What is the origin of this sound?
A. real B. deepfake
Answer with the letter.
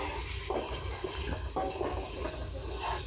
A